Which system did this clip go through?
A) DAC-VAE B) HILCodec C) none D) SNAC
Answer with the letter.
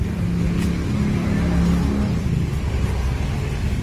C